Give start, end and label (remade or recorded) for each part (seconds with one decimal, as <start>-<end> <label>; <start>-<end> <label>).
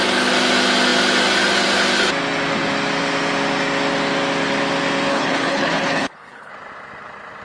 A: 0.0-5.1 recorded; 5.1-6.5 remade; 6.5-7.4 recorded